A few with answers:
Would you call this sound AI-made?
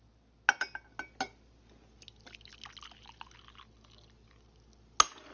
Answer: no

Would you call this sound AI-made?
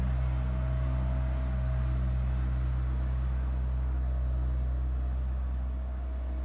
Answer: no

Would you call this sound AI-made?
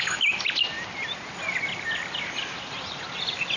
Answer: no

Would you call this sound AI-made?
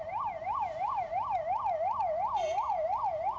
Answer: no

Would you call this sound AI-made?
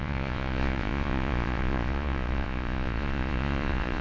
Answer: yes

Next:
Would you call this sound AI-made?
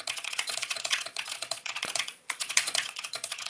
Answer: yes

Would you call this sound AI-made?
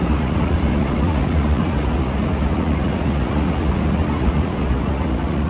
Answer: yes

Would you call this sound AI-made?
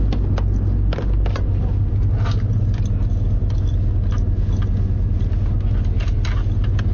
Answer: no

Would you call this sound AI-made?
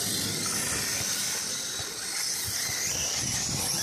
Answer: no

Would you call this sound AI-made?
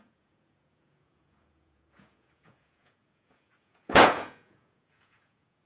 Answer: yes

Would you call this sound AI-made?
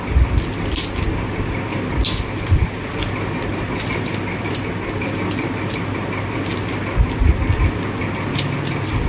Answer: no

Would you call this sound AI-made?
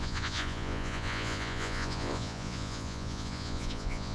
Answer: yes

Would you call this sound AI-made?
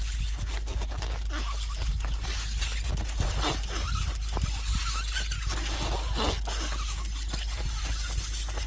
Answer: no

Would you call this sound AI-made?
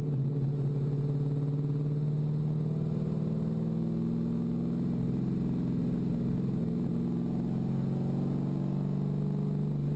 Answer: no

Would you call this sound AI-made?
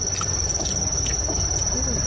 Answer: no